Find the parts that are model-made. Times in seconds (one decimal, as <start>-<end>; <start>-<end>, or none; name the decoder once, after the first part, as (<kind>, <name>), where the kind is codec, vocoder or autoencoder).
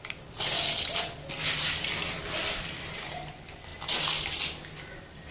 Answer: none